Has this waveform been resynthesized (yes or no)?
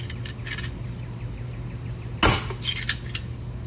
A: no